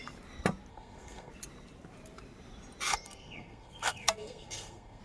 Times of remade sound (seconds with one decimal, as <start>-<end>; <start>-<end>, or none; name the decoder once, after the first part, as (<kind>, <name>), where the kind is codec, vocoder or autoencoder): 0.7-1.3 (codec, SNAC); 2.9-5.0